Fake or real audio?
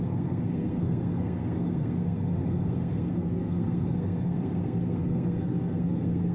fake